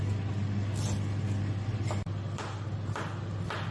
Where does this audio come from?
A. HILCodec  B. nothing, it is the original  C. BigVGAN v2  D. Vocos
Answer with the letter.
B